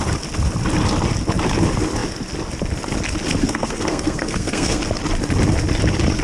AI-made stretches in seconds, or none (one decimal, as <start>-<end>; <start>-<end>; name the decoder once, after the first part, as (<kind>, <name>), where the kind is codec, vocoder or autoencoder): 3.4-4.8 (codec, SNAC)

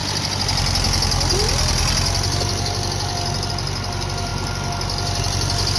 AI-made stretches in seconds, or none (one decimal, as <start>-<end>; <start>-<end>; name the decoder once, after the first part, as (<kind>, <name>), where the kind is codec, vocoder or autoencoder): none

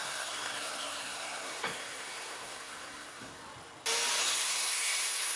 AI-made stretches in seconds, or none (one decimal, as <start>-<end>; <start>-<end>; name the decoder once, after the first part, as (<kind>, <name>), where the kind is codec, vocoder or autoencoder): 0.0-3.4 (codec, SNAC); 4.2-5.4

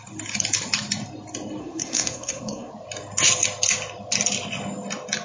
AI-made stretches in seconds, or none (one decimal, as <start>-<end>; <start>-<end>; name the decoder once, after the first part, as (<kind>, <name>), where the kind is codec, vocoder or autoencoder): 1.6-2.7 (codec, SNAC)